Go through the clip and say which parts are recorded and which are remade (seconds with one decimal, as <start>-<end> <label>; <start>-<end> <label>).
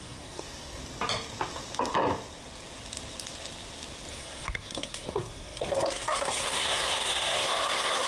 0.0-0.8 remade; 0.8-4.1 recorded; 4.1-8.1 remade